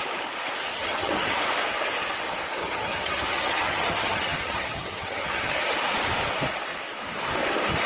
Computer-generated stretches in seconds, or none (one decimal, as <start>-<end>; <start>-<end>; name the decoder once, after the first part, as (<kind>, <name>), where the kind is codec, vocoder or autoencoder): 0.7-1.4 (vocoder, HiFi-GAN); 2.6-5.6